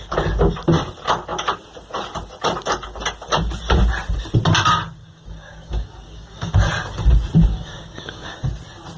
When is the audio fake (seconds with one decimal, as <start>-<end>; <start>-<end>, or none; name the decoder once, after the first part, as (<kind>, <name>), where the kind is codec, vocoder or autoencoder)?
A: 5.0-6.5 (codec, DAC); 7.5-8.4